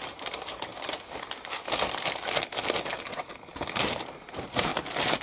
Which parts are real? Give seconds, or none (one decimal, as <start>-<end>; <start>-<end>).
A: 0.7-3.8; 4.7-5.2